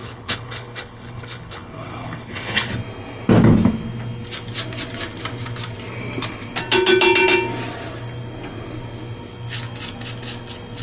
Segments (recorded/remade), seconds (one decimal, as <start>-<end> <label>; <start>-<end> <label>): 0.0-2.7 remade; 2.7-10.8 recorded